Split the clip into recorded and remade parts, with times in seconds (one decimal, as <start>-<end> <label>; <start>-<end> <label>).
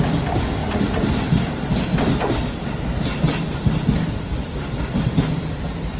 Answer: 0.0-6.0 recorded